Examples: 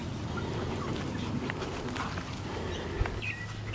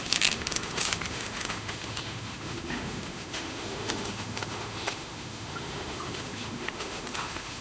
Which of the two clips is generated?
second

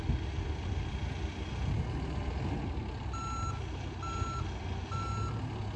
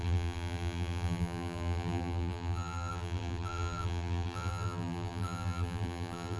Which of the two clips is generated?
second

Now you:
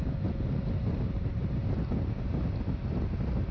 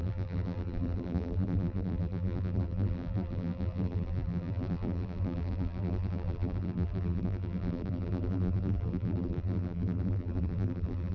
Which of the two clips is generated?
second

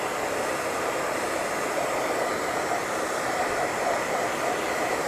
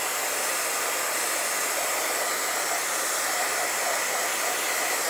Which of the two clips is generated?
first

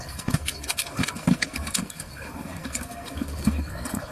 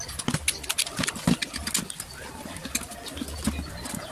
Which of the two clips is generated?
first